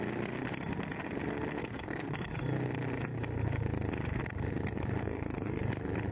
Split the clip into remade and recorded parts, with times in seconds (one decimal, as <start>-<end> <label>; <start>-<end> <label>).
0.0-1.6 recorded; 1.6-2.3 remade; 2.3-5.0 recorded; 5.0-5.6 remade; 5.6-6.1 recorded